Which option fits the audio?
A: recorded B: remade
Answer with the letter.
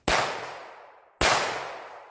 A